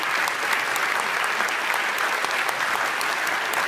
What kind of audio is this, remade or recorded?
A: recorded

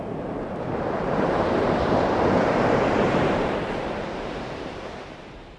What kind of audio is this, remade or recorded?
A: remade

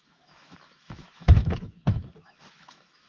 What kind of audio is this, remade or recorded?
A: remade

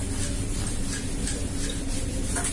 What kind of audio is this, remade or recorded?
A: remade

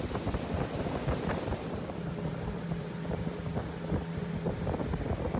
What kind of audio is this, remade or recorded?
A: recorded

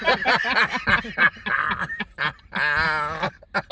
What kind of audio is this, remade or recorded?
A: recorded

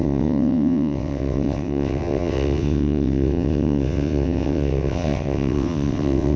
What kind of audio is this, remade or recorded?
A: remade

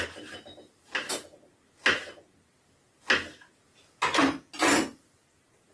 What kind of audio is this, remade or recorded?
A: recorded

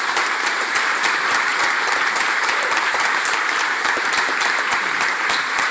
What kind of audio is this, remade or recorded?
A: remade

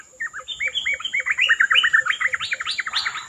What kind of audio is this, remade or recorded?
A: recorded